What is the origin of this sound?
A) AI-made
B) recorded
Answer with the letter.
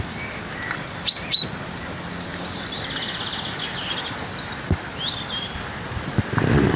B